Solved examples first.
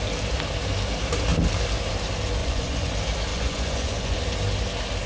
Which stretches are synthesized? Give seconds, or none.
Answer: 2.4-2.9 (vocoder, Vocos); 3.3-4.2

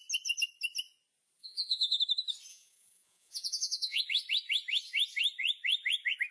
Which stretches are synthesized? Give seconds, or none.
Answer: 1.4-2.0 (vocoder, Vocos); 2.5-4.0

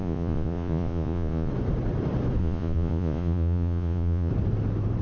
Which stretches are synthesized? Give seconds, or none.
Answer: 0.0-1.5 (vocoder, Vocos); 2.4-4.3